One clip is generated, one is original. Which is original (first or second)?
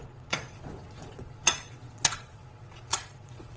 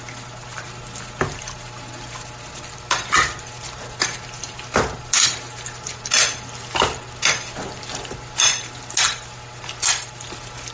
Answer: second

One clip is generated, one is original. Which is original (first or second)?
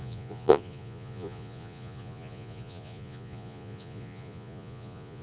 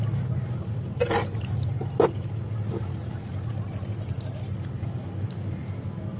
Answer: second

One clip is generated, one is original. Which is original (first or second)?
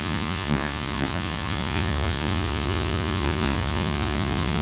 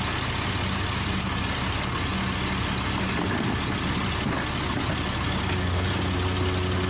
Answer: second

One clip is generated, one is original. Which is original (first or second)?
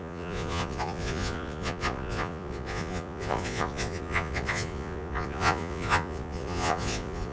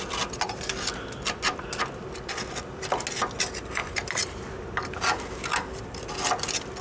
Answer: second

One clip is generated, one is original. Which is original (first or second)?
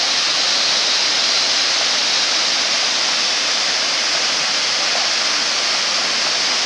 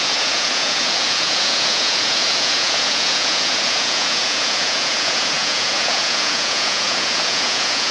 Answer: first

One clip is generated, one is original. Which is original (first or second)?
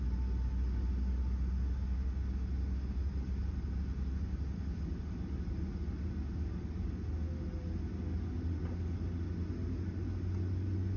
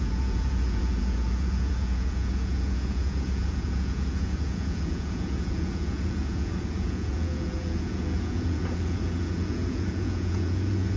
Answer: first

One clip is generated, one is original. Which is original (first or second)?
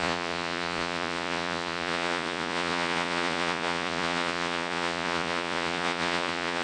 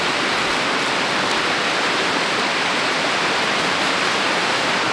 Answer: second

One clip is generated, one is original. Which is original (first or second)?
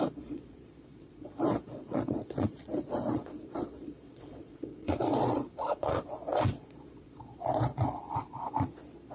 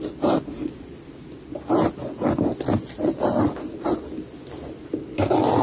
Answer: second